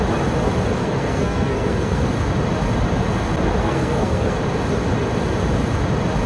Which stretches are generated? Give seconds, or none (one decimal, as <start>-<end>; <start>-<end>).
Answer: 0.8-2.1; 3.6-4.4